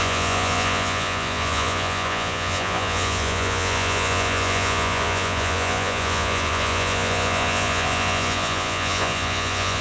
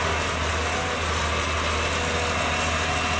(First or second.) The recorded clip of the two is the second